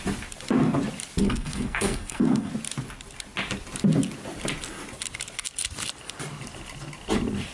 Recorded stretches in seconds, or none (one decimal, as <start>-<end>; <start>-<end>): 0.0-1.2; 2.5-7.5

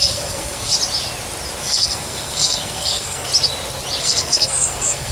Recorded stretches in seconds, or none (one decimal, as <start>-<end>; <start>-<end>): 0.7-1.6; 3.3-4.0

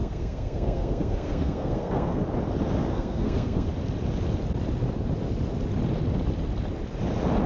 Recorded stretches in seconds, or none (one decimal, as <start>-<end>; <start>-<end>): 2.2-2.9; 3.7-7.5

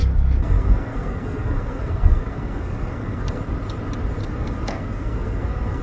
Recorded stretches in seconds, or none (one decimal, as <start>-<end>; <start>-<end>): 3.4-4.2

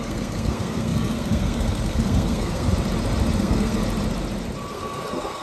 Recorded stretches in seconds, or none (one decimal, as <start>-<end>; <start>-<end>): 2.7-3.4; 3.8-4.7